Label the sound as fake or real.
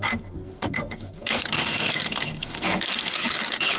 fake